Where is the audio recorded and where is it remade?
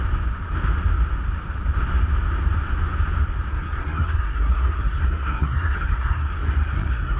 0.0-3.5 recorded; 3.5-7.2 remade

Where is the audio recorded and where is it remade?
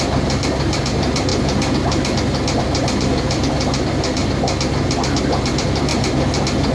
0.0-1.3 remade; 1.3-2.6 recorded; 2.6-4.2 remade; 4.2-5.2 recorded; 5.2-5.9 remade; 5.9-6.7 recorded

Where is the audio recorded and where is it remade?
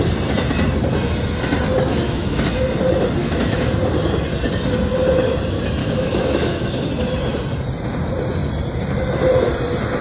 0.0-1.9 recorded; 1.9-2.4 remade; 2.4-3.2 recorded; 3.2-3.7 remade; 3.7-5.8 recorded; 5.8-6.9 remade; 6.9-10.0 recorded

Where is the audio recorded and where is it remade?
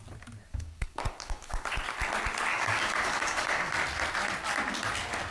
0.0-0.5 recorded; 0.5-1.7 remade; 1.7-2.5 recorded; 2.5-3.7 remade; 3.7-5.3 recorded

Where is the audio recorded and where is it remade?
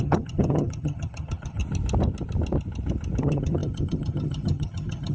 0.0-1.6 remade; 1.6-3.2 recorded; 3.2-5.1 remade